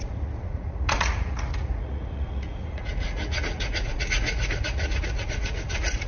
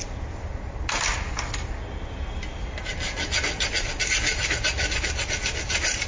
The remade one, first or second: first